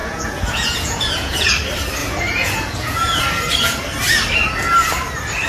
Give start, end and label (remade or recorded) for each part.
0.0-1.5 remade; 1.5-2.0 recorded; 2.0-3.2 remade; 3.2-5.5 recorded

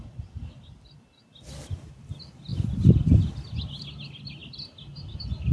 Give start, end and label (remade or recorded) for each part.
0.0-5.5 recorded

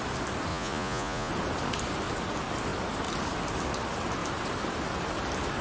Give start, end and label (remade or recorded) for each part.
0.0-0.5 recorded; 0.5-1.3 remade; 1.3-5.6 recorded

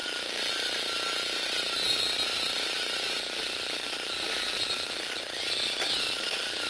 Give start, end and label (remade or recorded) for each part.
0.0-6.7 recorded

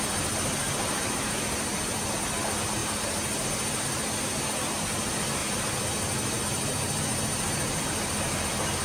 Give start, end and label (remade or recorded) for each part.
0.0-8.8 recorded

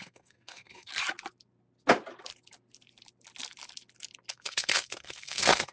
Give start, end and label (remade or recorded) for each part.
0.0-0.9 remade; 0.9-4.3 recorded; 4.3-5.7 remade